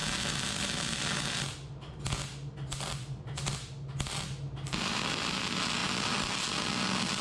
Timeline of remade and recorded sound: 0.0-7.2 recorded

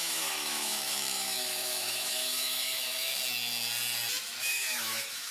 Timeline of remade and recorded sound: 0.0-3.1 remade; 3.1-4.4 recorded; 4.4-5.3 remade

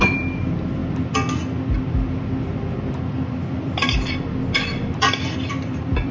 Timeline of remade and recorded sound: 0.0-0.8 remade; 0.8-2.9 recorded; 2.9-6.1 remade

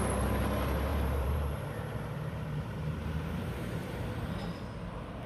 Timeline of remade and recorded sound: 0.0-0.9 recorded; 0.9-4.1 remade; 4.1-5.3 recorded